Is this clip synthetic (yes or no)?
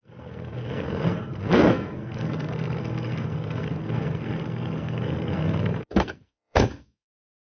yes